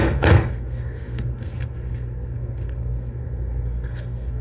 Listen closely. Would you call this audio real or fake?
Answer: fake